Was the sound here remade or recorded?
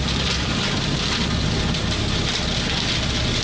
recorded